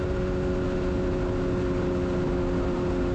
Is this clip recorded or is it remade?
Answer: recorded